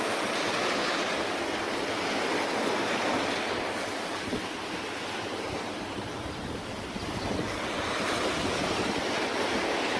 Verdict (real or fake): real